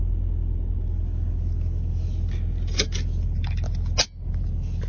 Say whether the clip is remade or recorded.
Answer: recorded